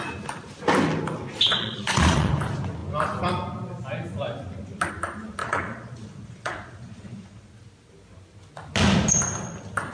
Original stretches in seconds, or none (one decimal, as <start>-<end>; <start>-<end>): 0.0-1.5; 2.3-5.4; 7.5-9.9